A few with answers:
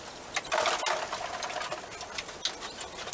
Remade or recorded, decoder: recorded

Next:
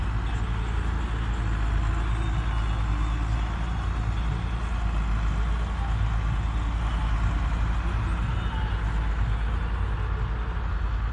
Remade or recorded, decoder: recorded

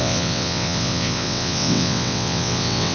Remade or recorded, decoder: remade, vocoder, WaveNeXt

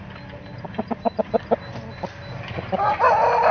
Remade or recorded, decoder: recorded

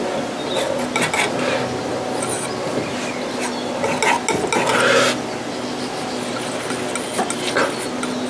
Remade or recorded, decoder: recorded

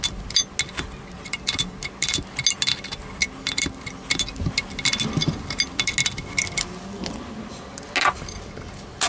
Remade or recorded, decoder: recorded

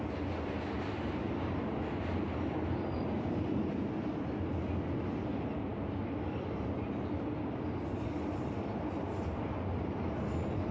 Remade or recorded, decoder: recorded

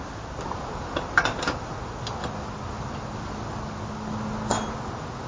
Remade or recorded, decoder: recorded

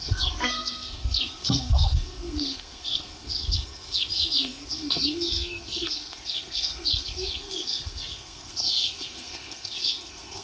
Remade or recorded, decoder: remade, codec, SNAC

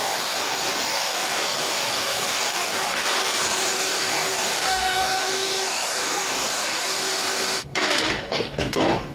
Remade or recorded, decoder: remade, codec, DAC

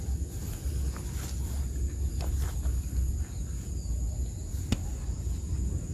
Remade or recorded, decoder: recorded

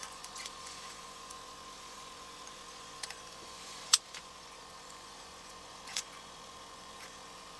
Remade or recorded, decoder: remade, vocoder, Vocos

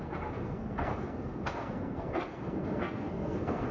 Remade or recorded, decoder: remade, codec, SNAC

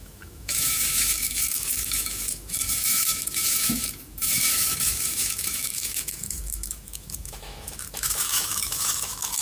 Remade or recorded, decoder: remade, autoencoder, DAC-VAE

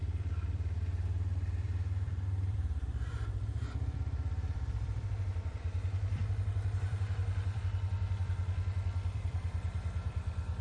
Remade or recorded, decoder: remade, vocoder, BigVGAN v2